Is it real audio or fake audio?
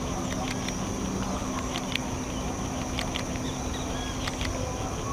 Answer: real